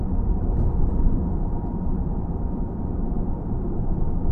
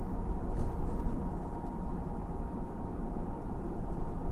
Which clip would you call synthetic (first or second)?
first